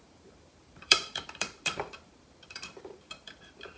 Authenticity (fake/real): fake